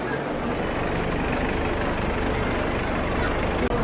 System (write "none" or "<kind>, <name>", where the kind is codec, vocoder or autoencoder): none